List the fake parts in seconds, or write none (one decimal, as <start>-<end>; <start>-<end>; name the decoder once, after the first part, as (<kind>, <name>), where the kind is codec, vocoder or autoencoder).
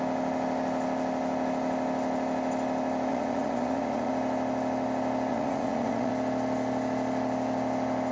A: 3.1-4.1 (vocoder, Vocos); 5.3-6.1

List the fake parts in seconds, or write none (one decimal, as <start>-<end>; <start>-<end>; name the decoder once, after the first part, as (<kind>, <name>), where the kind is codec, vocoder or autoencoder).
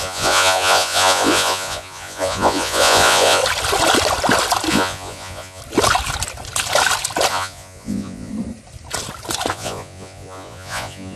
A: 0.0-3.4 (vocoder, Vocos); 4.7-5.6; 7.3-8.3; 9.5-11.2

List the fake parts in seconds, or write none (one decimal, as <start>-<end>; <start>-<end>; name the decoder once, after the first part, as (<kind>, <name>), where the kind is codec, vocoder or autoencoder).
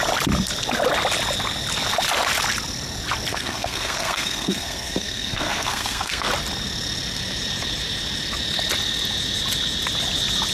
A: 3.3-6.3 (codec, SNAC)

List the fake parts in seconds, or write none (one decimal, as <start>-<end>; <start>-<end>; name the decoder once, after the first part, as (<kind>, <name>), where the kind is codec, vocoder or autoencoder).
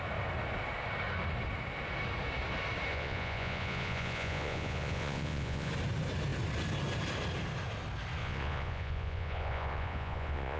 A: 2.9-5.7 (vocoder, Vocos); 8.2-10.6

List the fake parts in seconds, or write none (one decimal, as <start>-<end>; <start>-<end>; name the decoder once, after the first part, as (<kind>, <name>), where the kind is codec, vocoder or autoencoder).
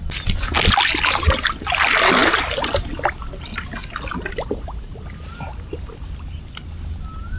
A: none